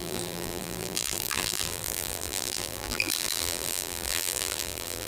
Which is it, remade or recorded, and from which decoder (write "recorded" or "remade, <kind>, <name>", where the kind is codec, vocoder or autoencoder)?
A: remade, vocoder, BigVGAN v2